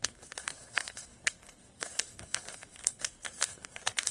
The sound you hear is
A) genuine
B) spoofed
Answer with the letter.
B